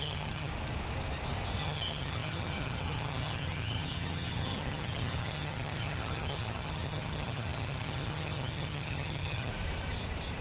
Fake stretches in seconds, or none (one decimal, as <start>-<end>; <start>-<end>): 0.0-0.5; 1.6-9.5